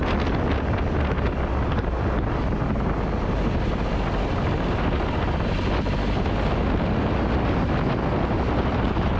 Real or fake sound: real